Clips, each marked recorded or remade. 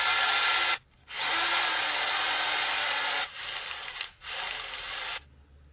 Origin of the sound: recorded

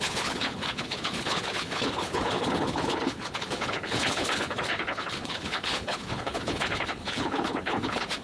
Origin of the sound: remade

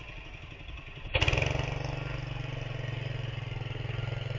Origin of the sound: recorded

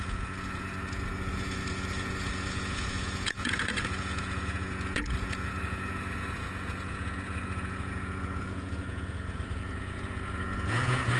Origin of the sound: remade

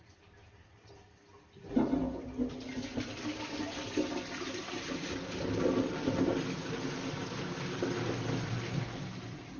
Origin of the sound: recorded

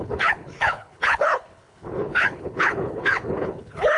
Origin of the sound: remade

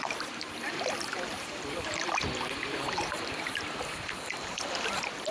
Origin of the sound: remade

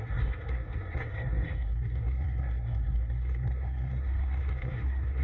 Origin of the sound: remade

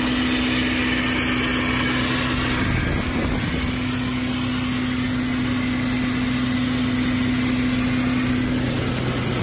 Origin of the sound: recorded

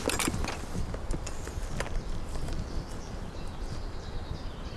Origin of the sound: remade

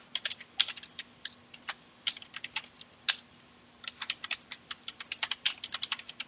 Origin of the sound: recorded